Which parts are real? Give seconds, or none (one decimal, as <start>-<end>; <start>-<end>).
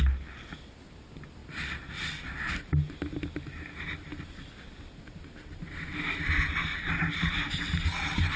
0.0-8.4